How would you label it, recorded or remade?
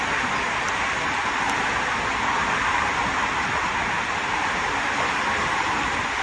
recorded